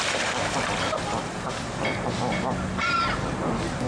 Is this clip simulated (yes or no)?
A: no